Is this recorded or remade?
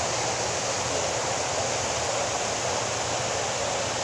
recorded